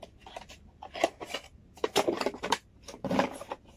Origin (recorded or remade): remade